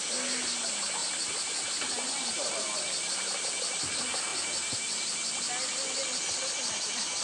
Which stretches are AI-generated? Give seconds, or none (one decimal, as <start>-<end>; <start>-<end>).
none